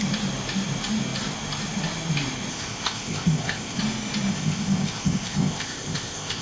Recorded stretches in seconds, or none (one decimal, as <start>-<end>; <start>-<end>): 0.0-2.5; 3.8-4.3